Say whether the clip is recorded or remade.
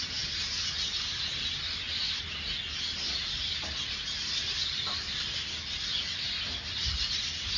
recorded